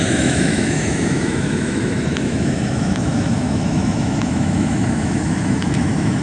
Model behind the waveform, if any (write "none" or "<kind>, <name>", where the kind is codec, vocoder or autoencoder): autoencoder, DAC-VAE